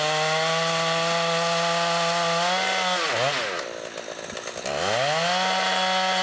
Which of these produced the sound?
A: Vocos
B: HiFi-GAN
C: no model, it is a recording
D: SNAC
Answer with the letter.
C